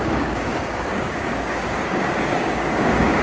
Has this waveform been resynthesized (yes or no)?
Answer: yes